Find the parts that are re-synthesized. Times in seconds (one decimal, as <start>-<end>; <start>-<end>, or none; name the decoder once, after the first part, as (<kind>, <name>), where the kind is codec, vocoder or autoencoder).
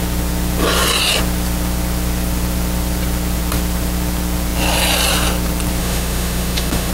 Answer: 5.8-6.9 (autoencoder, DAC-VAE)